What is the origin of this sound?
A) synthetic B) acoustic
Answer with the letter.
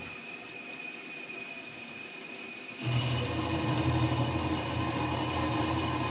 B